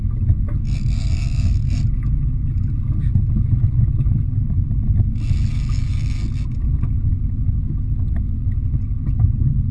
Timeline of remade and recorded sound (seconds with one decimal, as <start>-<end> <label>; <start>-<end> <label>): 0.0-9.7 recorded